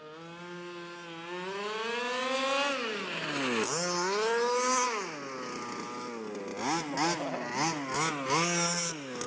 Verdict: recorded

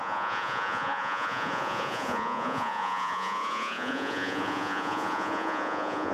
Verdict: remade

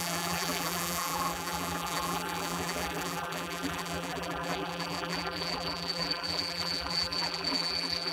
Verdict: remade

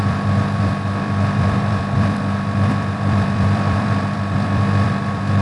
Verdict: remade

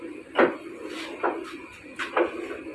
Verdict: recorded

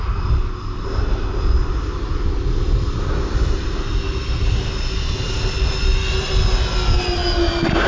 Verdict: recorded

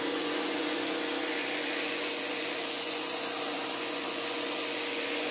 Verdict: remade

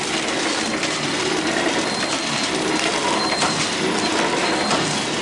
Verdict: recorded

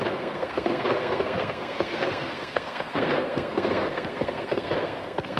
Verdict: remade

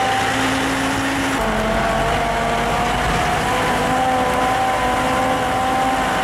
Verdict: recorded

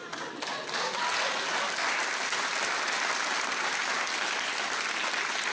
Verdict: recorded